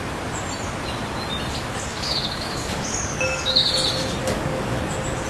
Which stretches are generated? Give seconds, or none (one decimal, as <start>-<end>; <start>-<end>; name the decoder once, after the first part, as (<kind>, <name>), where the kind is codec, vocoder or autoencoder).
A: 1.9-3.7 (codec, DAC); 4.2-4.8